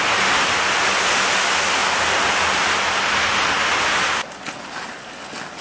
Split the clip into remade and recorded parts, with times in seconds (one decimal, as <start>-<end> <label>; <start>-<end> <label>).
0.0-5.6 recorded